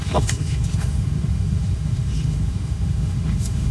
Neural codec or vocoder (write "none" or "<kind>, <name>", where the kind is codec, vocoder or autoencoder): autoencoder, DAC-VAE